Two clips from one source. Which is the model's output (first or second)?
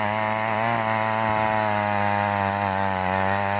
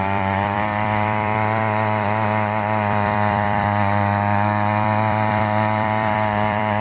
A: second